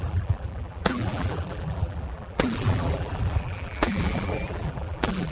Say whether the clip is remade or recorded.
remade